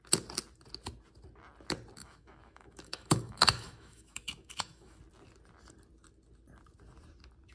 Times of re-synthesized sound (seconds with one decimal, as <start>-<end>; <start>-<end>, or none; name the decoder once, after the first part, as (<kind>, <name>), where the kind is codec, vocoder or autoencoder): 2.0-5.0 (autoencoder, DAC-VAE)